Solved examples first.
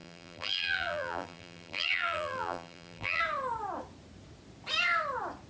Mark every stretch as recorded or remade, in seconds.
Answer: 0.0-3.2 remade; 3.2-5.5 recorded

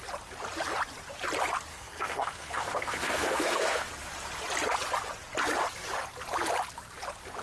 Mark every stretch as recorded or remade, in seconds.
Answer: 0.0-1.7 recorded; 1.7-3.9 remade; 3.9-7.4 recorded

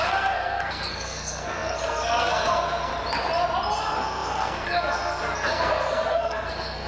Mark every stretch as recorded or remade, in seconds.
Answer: 0.0-2.9 remade; 2.9-3.8 recorded; 3.8-6.9 remade

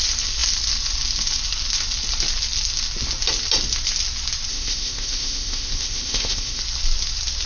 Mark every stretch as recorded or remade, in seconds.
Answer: 0.0-4.5 recorded; 4.5-6.6 remade; 6.6-7.5 recorded

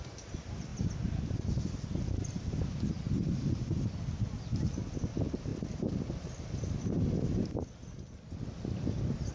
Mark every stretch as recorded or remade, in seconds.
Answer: 0.0-9.3 recorded

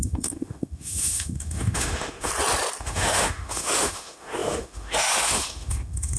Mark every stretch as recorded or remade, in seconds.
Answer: 0.0-2.3 remade; 2.3-2.8 recorded; 2.8-6.2 remade

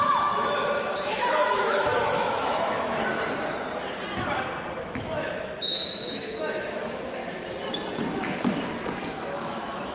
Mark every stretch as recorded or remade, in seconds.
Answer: 0.0-3.0 remade; 3.0-4.8 recorded; 4.8-7.2 remade; 7.2-9.1 recorded; 9.1-9.9 remade

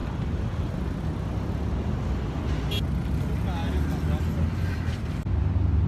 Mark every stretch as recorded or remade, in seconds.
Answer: 0.0-5.9 recorded